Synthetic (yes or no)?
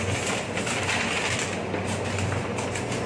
no